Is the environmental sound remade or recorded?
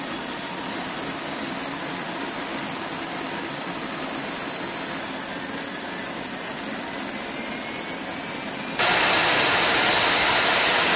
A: recorded